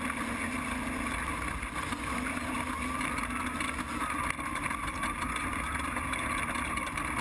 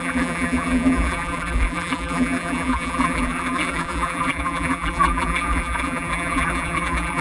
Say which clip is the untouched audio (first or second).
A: first